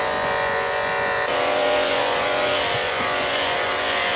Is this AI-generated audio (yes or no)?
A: yes